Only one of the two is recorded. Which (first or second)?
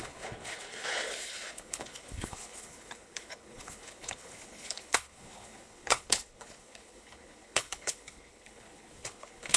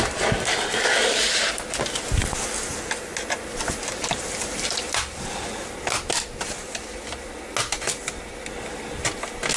second